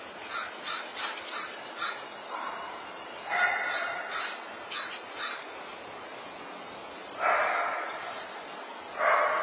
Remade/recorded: recorded